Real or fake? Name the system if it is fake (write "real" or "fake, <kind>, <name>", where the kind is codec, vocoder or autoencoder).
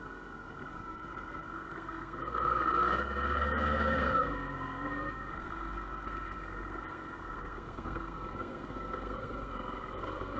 fake, codec, SNAC